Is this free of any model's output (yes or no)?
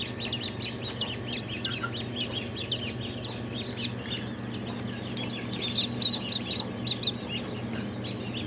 yes